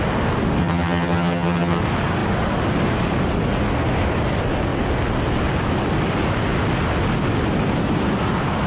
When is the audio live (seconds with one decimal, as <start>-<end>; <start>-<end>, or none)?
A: 0.0-0.6; 1.8-8.7